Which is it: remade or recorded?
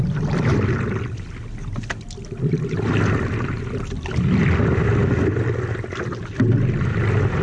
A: recorded